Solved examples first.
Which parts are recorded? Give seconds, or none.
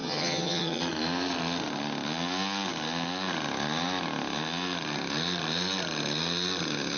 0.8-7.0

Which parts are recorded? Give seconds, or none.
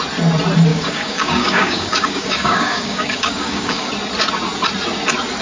0.0-0.7; 3.9-5.4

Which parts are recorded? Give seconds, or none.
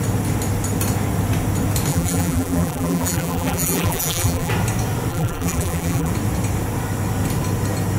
0.0-1.9; 4.5-5.1; 6.1-8.0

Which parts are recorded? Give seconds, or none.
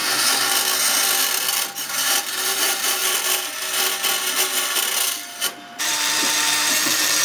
0.0-1.8; 3.0-5.8